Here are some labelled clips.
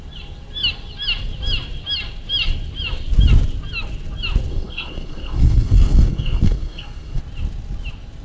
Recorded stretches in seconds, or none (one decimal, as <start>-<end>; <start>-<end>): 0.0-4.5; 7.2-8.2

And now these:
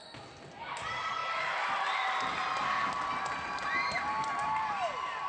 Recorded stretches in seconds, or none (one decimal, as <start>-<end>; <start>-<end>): 0.0-5.3

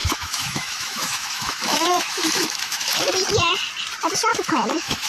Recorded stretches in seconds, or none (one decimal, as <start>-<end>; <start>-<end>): 3.1-4.3